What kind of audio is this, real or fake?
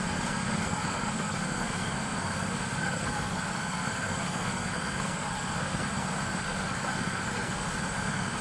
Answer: fake